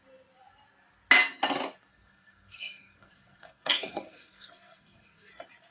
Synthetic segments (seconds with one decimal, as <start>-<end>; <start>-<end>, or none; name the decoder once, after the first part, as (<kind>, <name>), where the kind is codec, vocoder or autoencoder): 1.9-5.3 (codec, SNAC)